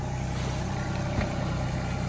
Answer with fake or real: real